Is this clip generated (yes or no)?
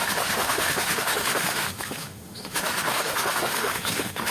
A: yes